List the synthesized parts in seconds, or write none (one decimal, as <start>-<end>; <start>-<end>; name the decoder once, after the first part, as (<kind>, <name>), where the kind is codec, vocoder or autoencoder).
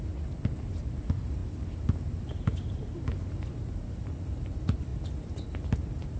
none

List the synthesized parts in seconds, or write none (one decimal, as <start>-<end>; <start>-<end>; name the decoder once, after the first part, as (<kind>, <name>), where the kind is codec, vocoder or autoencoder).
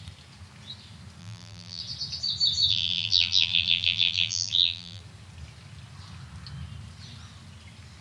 1.2-1.8 (vocoder, BigVGAN v2); 2.7-5.0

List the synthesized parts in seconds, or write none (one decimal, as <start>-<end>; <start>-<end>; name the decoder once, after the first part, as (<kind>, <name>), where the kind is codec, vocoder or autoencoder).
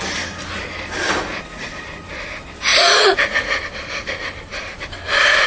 none